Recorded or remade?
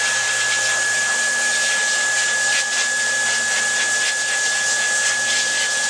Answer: recorded